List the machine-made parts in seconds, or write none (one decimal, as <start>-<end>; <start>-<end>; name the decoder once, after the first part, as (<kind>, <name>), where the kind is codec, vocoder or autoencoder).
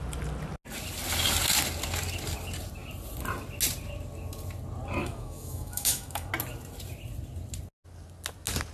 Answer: 5.0-6.3 (autoencoder, DAC-VAE)